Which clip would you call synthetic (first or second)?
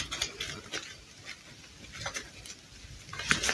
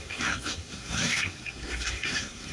second